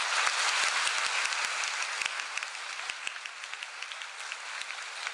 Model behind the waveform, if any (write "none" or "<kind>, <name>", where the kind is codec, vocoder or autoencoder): none